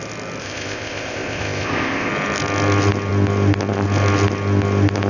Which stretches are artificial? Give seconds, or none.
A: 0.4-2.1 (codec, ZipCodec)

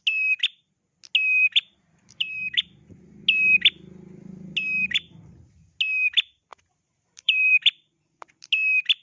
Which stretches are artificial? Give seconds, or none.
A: 1.4-3.0 (vocoder, BigVGAN v2); 6.5-8.5

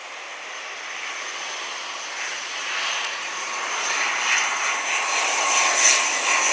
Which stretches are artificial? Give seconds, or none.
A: 2.3-3.5 (vocoder, Vocos)

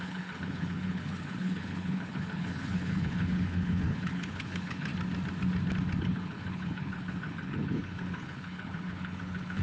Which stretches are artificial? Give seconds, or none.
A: 0.0-4.9 (codec, HILCodec); 6.0-9.6

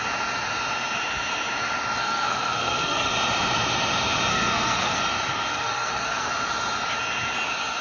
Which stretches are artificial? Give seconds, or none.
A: 2.0-3.1 (codec, SNAC); 4.3-5.0; 5.5-6.3

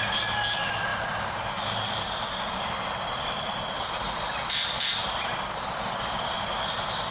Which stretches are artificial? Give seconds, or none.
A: 0.9-3.8 (vocoder, BigVGAN v2)

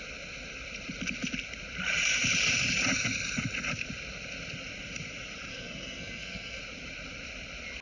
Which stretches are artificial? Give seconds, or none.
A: 5.5-6.6 (codec, SNAC)

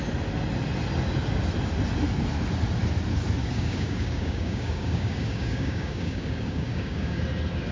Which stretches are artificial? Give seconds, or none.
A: 3.4-7.2 (codec, DAC)